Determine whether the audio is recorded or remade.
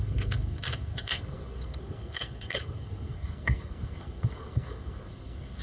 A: remade